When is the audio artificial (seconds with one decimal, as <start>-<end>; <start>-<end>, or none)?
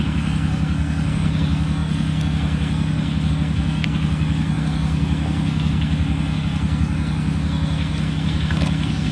0.0-9.1